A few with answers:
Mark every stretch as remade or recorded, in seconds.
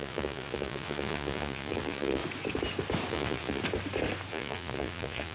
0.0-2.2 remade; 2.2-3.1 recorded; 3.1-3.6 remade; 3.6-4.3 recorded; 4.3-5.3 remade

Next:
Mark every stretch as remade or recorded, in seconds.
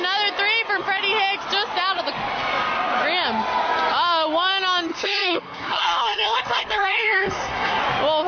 0.0-4.9 recorded; 4.9-7.8 remade; 7.8-8.3 recorded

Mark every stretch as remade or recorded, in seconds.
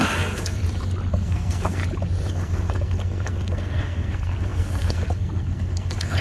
0.0-0.6 remade; 0.6-1.1 recorded; 1.1-1.8 remade; 1.8-2.3 recorded; 2.3-6.2 remade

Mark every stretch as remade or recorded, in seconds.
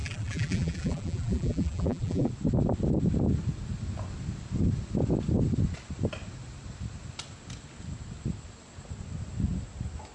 0.0-2.3 remade; 2.3-10.1 recorded